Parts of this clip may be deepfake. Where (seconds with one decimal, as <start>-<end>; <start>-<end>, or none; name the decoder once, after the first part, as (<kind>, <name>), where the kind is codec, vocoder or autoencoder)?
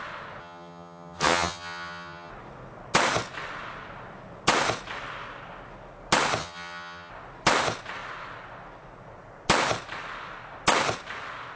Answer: 0.4-2.3 (vocoder, HiFi-GAN); 6.4-7.1